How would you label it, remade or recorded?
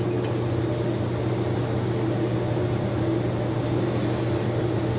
recorded